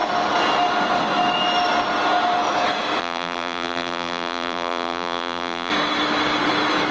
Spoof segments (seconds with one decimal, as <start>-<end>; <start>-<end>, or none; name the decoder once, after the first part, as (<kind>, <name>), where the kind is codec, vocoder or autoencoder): 3.0-5.7 (vocoder, BigVGAN v2)